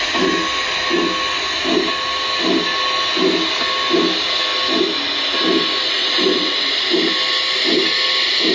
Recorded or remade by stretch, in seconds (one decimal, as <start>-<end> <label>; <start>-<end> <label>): 0.0-6.0 recorded; 6.0-6.7 remade; 6.7-8.5 recorded